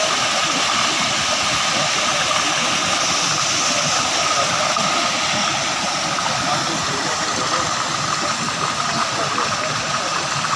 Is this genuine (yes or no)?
yes